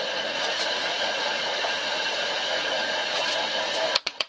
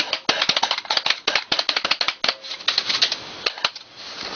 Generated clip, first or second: first